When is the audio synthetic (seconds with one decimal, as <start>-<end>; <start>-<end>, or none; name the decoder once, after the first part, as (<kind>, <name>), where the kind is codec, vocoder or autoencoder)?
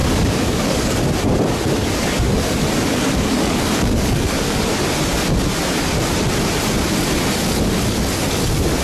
0.0-1.0 (codec, DAC); 1.8-4.6